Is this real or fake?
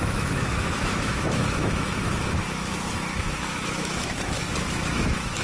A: fake